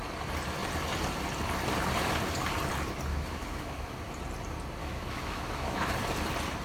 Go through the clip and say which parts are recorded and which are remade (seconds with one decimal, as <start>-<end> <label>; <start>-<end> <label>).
0.0-3.1 recorded; 3.1-4.0 remade; 4.0-4.8 recorded; 4.8-5.9 remade; 5.9-6.6 recorded